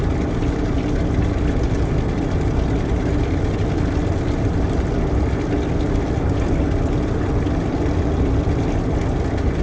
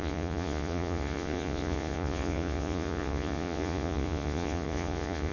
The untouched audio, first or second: first